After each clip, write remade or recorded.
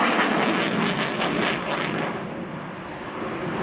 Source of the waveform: recorded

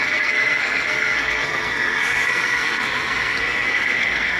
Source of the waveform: remade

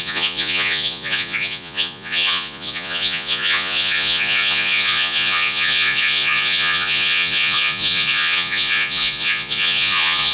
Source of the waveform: remade